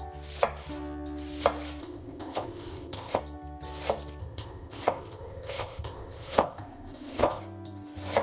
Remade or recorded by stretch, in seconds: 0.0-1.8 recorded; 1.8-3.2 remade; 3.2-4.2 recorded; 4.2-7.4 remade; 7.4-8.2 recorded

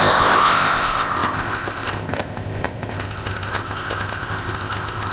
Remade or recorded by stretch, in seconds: 0.0-5.1 remade

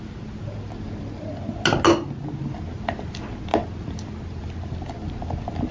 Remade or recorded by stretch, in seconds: 0.0-5.7 recorded

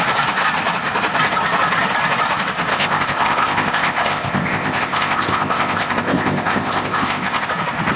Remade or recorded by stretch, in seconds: 0.0-2.7 recorded; 2.7-7.5 remade; 7.5-8.0 recorded

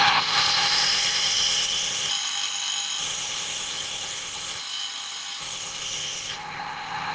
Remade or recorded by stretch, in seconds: 0.0-2.1 remade; 2.1-3.0 recorded; 3.0-4.6 remade; 4.6-5.4 recorded; 5.4-7.1 remade

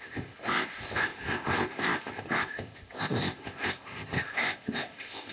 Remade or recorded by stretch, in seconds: 0.0-5.3 remade

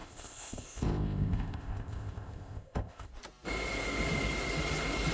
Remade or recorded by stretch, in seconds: 0.0-3.1 remade; 3.1-5.1 recorded